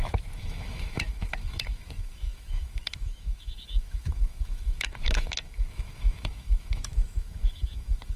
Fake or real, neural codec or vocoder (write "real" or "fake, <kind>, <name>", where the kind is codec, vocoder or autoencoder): fake, autoencoder, DAC-VAE